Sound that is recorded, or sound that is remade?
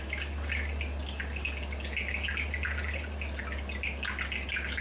recorded